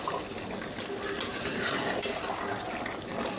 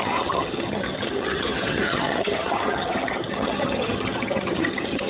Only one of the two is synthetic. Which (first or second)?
second